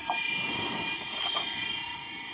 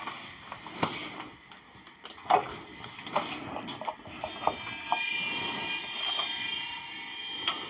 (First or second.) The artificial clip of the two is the first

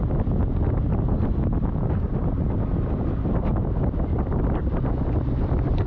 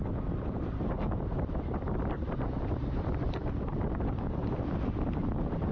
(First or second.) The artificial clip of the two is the second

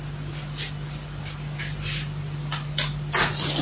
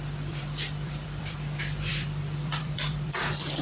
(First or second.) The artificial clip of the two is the second